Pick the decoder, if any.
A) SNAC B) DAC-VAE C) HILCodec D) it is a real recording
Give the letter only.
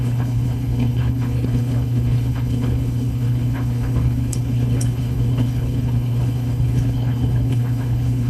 C